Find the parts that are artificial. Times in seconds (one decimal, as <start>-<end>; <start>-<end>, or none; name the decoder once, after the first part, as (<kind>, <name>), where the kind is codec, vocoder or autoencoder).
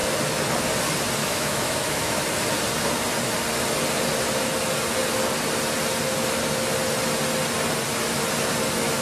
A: 1.2-2.2 (autoencoder, DAC-VAE)